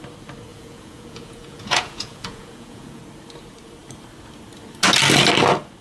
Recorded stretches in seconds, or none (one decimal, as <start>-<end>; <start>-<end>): 0.0-0.5; 3.0-5.8